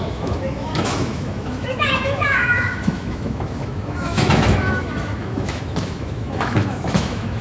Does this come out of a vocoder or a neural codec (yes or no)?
yes